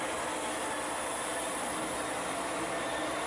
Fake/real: real